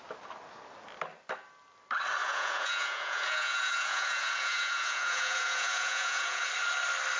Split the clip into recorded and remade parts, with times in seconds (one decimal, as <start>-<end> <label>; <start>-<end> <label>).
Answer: 0.0-2.2 recorded; 2.2-6.5 remade; 6.5-7.2 recorded